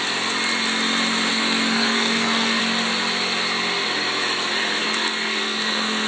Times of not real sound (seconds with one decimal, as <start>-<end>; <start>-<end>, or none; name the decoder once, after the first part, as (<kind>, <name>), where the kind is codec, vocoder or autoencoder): 1.3-2.6 (codec, SNAC); 4.8-6.1